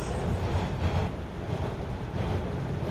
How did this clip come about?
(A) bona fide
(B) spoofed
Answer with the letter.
A